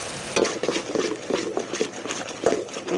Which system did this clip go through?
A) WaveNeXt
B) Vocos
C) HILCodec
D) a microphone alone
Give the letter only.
D